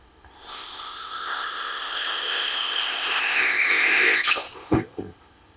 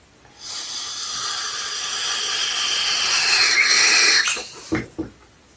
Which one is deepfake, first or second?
first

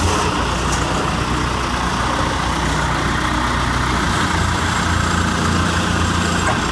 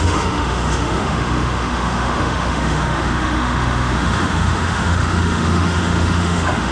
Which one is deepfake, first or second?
second